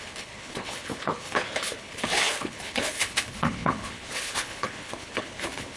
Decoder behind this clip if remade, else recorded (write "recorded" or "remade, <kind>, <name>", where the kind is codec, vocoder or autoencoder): remade, codec, HILCodec